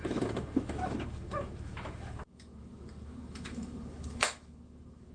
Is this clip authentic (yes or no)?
no